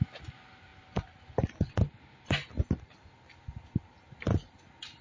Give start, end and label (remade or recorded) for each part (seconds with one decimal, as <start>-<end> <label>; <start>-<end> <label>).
0.0-5.0 recorded